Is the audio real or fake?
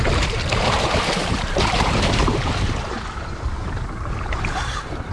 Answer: fake